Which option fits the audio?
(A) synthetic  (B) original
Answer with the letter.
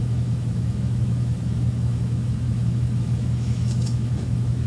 A